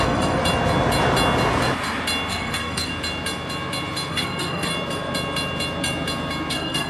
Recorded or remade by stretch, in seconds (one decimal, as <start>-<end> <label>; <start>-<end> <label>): 0.0-0.4 remade; 0.4-2.3 recorded; 2.3-2.9 remade; 2.9-4.1 recorded; 4.1-4.7 remade; 4.7-6.5 recorded; 6.5-6.9 remade